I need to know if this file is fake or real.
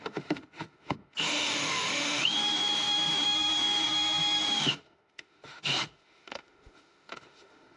fake